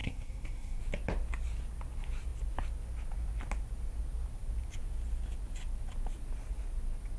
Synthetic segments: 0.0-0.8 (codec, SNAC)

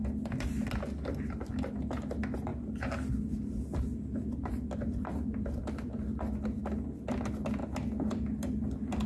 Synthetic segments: none